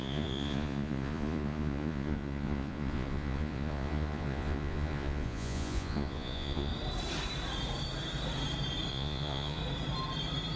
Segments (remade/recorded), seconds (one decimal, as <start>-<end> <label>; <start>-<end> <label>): 0.0-6.7 remade; 6.7-8.9 recorded; 8.9-9.6 remade; 9.6-10.6 recorded